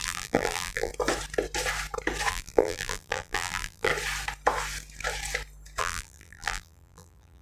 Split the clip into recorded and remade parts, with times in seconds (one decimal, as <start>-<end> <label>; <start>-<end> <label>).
0.0-0.9 remade; 0.9-2.3 recorded; 2.3-3.9 remade; 3.9-5.8 recorded; 5.8-7.4 remade